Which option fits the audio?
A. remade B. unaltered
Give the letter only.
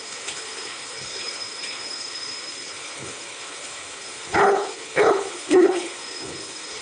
A